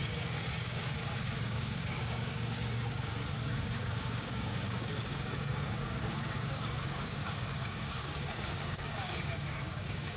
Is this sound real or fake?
fake